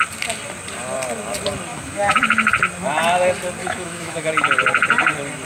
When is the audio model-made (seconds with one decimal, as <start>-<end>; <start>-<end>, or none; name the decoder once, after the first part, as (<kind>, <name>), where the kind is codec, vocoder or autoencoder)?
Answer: 1.7-2.5 (autoencoder, DAC-VAE); 3.6-4.3